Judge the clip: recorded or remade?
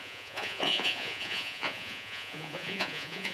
remade